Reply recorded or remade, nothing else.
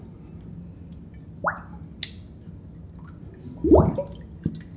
recorded